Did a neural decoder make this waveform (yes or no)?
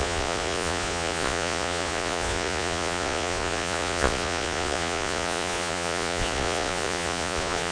yes